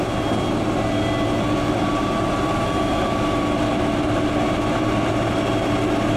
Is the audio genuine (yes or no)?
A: yes